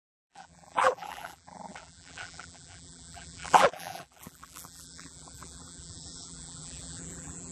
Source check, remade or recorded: remade